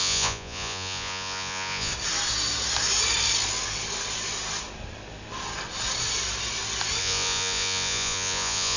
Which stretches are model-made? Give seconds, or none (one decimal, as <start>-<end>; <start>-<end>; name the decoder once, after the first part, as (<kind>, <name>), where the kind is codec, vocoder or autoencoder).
0.0-1.9 (vocoder, Vocos); 7.0-8.8